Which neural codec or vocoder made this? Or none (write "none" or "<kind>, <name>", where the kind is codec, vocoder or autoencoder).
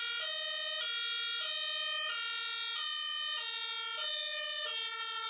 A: none